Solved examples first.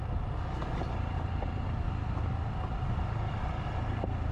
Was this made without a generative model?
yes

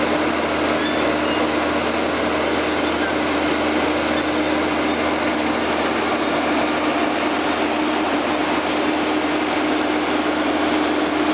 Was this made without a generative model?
yes